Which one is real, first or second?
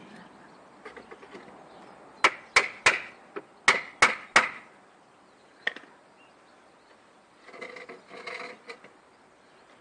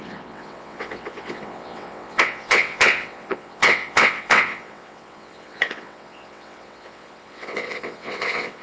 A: first